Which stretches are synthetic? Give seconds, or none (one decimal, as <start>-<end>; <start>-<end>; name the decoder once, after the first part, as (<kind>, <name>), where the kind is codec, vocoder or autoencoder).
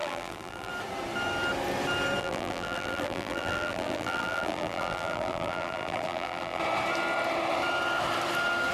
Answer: 0.0-0.7 (vocoder, BigVGAN v2); 2.2-6.6